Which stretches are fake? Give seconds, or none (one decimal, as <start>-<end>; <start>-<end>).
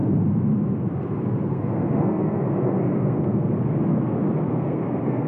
1.5-3.5; 4.5-5.3